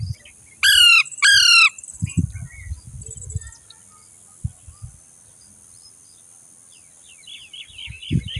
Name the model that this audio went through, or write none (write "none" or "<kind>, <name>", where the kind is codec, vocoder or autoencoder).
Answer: none